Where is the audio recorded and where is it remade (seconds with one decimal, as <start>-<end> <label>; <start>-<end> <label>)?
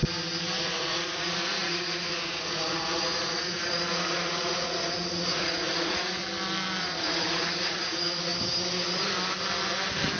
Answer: 0.0-0.6 recorded; 0.6-6.2 remade; 6.2-6.8 recorded; 6.8-8.3 remade; 8.3-10.2 recorded